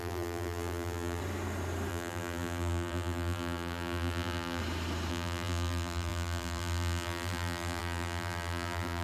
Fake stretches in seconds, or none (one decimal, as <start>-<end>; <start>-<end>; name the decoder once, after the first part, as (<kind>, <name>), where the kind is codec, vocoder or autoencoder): 0.0-1.2 (vocoder, BigVGAN v2); 1.9-4.6; 5.1-9.0